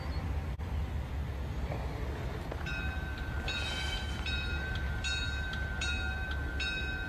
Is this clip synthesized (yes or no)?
no